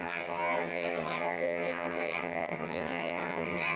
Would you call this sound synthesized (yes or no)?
yes